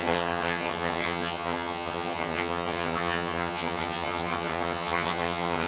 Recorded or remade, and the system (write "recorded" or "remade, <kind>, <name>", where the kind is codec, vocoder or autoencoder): remade, vocoder, HiFi-GAN